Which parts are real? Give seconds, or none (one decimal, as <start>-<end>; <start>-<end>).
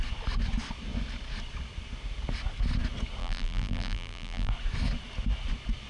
0.0-3.2; 4.5-5.9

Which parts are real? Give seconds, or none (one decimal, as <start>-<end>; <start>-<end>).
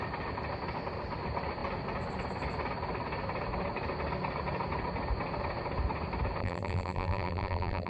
0.0-6.4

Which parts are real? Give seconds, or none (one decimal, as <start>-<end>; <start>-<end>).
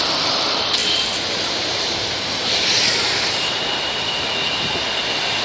0.0-0.8; 4.0-5.4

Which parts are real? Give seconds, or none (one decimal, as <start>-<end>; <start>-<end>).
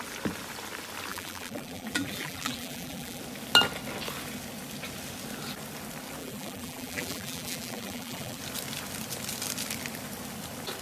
0.0-1.1; 3.2-6.2; 8.4-10.8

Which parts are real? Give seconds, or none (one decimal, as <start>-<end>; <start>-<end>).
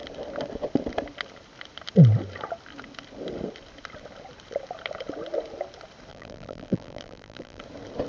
0.0-6.1; 7.6-8.1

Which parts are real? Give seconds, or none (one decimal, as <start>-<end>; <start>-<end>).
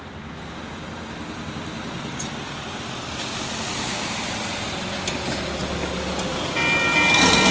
0.0-7.5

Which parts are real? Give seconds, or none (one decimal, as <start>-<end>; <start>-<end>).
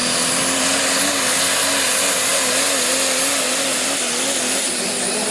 1.0-5.3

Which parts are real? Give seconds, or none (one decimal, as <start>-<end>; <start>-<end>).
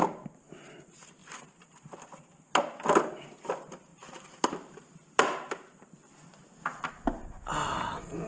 0.0-1.2; 2.5-3.9; 6.9-8.3